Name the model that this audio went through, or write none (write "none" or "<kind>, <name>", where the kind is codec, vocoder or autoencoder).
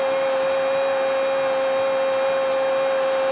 none